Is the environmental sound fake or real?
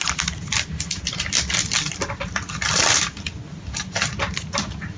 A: real